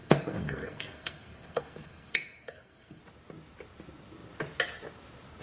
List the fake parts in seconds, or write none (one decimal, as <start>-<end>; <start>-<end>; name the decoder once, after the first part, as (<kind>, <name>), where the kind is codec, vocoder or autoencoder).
0.0-3.0 (codec, SNAC)